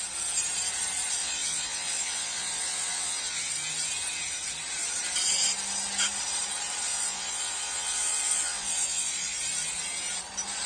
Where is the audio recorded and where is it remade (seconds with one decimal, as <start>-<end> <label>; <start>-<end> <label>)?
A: 0.0-1.2 recorded; 1.2-3.5 remade; 3.5-6.9 recorded; 6.9-9.4 remade; 9.4-10.7 recorded